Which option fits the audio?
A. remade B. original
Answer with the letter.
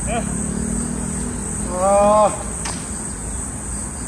B